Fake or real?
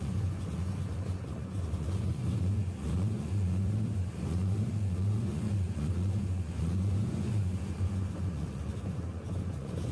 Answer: fake